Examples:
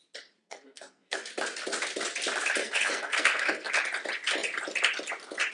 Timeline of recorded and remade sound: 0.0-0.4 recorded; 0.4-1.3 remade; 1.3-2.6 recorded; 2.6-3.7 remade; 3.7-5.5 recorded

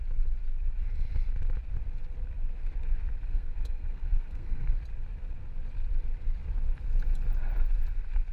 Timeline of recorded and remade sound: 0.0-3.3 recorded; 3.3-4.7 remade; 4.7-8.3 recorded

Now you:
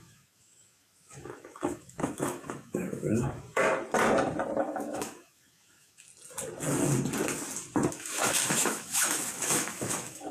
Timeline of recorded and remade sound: 0.0-3.6 remade; 3.6-4.6 recorded; 4.6-6.1 remade; 6.1-7.9 recorded; 7.9-10.3 remade

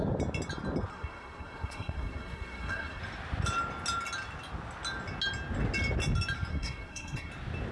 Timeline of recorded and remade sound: 0.0-0.9 recorded; 0.9-3.0 remade; 3.0-6.5 recorded; 6.5-7.3 remade; 7.3-7.7 recorded

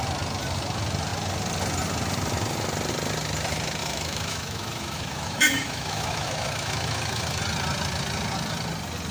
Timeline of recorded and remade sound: 0.0-3.8 recorded; 3.8-7.4 remade; 7.4-9.1 recorded